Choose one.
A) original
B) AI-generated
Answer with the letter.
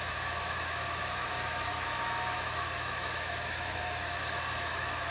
B